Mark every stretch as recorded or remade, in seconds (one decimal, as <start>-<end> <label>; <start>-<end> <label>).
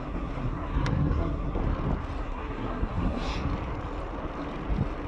0.0-1.6 remade; 1.6-2.2 recorded; 2.2-3.3 remade; 3.3-5.1 recorded